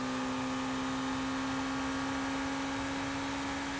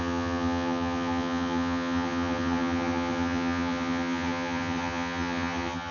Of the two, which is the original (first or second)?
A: first